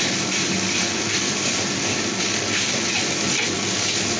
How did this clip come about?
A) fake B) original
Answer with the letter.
B